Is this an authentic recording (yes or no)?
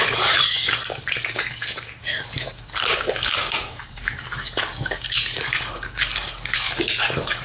no